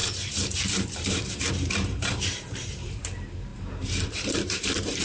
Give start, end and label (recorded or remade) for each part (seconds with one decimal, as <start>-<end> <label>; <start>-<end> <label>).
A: 0.0-5.0 remade